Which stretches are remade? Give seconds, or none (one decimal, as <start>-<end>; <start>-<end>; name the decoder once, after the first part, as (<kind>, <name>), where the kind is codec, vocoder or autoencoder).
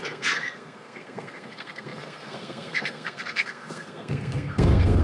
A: 0.0-5.0 (codec, SNAC)